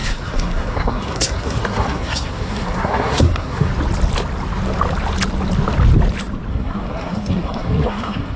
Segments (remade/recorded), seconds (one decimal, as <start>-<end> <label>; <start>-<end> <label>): 0.0-3.7 remade; 3.7-6.5 recorded; 6.5-8.4 remade